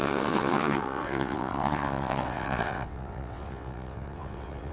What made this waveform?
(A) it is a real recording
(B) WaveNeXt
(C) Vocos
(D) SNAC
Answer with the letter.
B